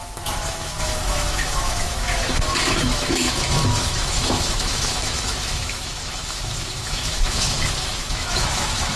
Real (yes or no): no